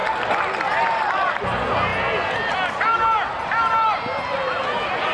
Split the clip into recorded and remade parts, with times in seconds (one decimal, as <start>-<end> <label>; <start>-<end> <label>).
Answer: 0.0-5.1 recorded

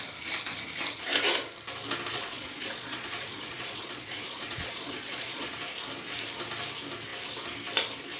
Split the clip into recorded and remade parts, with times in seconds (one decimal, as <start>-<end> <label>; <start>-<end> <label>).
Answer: 0.0-2.1 recorded; 2.1-5.5 remade; 5.5-8.2 recorded

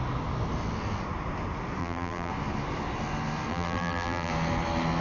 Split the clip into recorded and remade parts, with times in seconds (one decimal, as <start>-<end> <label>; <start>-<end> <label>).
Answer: 0.0-1.8 recorded; 1.8-2.3 remade; 2.3-3.5 recorded; 3.5-4.3 remade; 4.3-5.0 recorded